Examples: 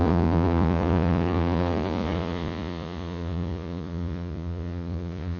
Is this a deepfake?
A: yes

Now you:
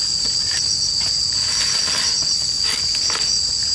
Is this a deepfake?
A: no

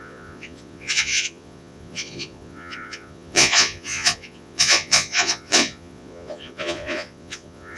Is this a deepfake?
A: yes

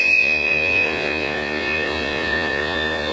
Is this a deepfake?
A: yes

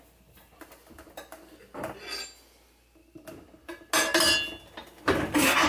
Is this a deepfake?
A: no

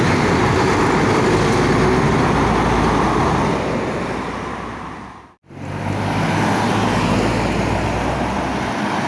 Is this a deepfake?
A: no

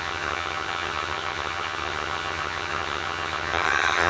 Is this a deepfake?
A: yes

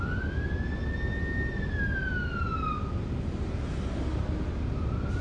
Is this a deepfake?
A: no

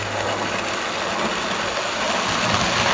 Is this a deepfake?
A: no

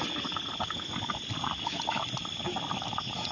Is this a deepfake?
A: no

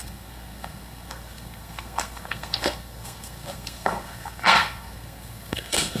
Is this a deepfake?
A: yes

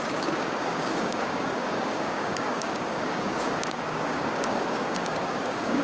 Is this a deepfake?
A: yes